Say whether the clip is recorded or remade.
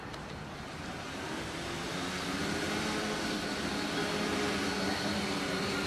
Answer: recorded